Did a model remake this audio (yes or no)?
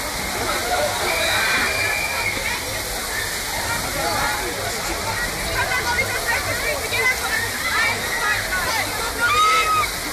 no